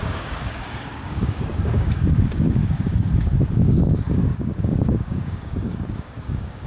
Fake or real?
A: fake